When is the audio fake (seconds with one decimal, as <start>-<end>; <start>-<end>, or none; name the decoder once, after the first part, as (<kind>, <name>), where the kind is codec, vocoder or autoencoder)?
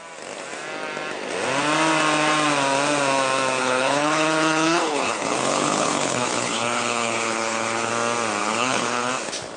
3.6-7.9 (codec, HILCodec); 8.4-9.1